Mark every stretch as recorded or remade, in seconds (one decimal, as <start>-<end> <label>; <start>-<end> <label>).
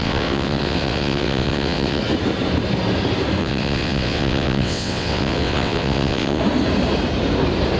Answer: 0.0-2.0 remade; 2.0-3.4 recorded; 3.4-6.4 remade; 6.4-7.8 recorded